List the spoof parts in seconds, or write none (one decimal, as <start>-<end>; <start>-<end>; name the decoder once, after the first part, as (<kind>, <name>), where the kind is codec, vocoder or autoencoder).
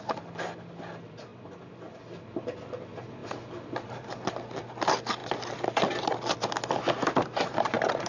none